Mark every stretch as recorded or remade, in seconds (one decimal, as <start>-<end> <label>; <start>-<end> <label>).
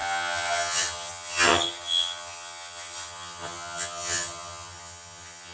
0.0-5.5 remade